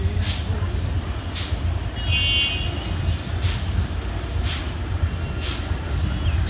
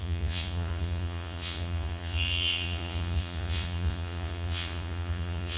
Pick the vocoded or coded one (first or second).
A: second